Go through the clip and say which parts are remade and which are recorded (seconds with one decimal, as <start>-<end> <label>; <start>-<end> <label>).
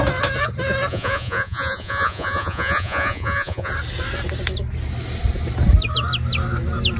0.0-0.9 recorded; 0.9-3.7 remade; 3.7-7.0 recorded